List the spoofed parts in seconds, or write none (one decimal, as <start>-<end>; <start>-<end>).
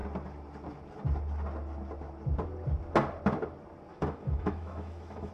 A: 3.9-5.3